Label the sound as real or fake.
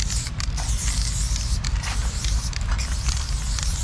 real